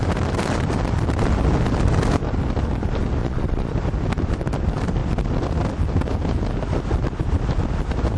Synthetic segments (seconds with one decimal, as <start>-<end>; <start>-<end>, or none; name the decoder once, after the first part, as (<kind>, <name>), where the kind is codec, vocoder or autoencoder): 3.2-3.7 (vocoder, Vocos)